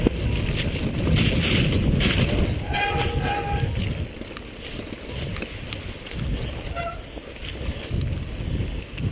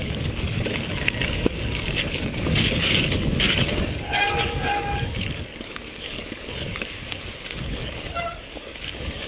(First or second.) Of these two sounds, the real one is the first